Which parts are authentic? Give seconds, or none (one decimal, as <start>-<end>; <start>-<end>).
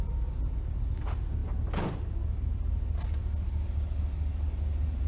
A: 0.0-5.1